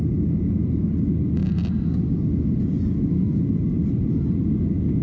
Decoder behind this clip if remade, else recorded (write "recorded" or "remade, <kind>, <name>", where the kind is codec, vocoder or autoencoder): recorded